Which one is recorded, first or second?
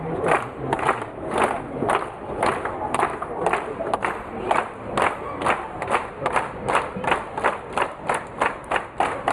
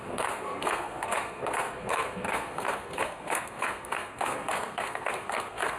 first